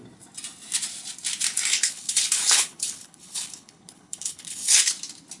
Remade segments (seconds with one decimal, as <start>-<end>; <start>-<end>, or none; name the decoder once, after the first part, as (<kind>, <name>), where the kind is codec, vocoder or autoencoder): 1.7-4.9 (codec, HILCodec)